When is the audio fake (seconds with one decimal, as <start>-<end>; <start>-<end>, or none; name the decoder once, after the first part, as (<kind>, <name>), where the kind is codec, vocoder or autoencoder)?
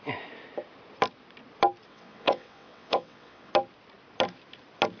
1.9-3.5 (vocoder, WaveNeXt)